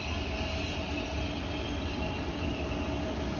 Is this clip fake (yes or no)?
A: no